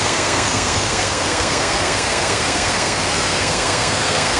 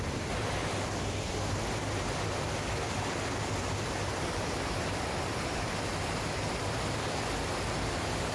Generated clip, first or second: first